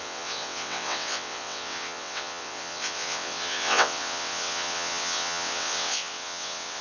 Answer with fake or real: fake